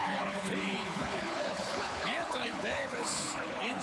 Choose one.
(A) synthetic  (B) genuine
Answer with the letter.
A